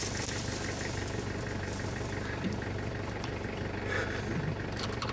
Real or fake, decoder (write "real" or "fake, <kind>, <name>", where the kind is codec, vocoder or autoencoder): fake, vocoder, BigVGAN v2